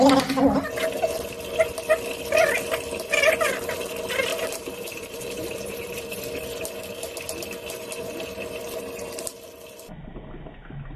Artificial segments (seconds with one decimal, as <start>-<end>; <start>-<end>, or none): 4.3-6.2